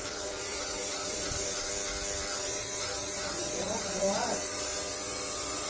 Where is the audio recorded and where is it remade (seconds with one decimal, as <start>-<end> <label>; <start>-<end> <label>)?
0.0-1.7 remade; 1.7-2.3 recorded; 2.3-5.7 remade